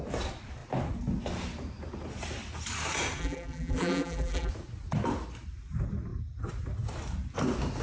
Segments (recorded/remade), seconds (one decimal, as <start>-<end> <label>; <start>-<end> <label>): 0.0-3.2 recorded; 3.2-4.5 remade; 4.5-7.8 recorded